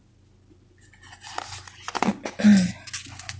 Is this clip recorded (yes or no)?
yes